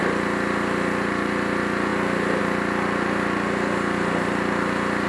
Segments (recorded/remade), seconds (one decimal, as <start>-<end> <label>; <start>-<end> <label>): 0.0-5.1 recorded